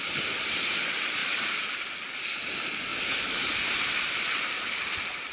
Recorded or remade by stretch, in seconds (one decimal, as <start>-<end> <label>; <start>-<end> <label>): 0.0-5.3 recorded